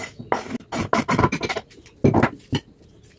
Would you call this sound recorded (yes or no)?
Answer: yes